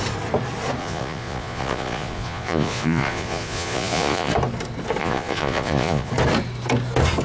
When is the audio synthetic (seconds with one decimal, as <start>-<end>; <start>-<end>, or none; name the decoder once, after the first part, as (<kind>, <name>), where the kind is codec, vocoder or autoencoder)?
0.8-4.3 (vocoder, Vocos); 5.0-6.1